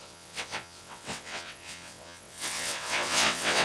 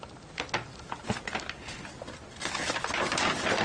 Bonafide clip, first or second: second